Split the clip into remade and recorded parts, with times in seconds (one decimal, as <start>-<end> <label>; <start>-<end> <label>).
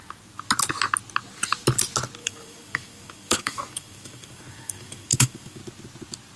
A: 0.0-2.2 recorded; 2.2-5.6 remade; 5.6-6.4 recorded